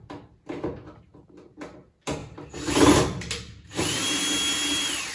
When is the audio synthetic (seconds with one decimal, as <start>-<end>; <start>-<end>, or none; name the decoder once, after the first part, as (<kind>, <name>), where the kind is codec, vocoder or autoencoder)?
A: none